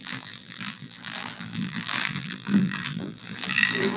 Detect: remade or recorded remade